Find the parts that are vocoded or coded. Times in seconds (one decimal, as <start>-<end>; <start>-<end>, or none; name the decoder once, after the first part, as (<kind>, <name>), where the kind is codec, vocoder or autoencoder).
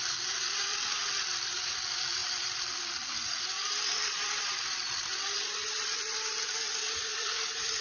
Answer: 0.0-7.8 (vocoder, BigVGAN v2)